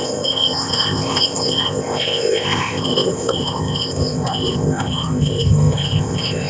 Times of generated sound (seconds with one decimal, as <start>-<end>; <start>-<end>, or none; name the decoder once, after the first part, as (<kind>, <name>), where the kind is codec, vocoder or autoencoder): 0.0-6.5 (codec, ZipCodec)